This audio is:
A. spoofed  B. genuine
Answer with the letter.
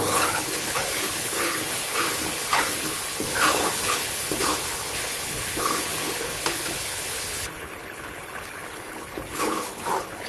A